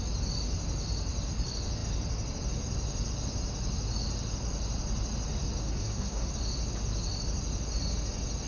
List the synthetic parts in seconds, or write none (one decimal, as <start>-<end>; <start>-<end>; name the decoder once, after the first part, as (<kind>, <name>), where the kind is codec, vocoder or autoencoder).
5.6-6.3 (codec, SNAC)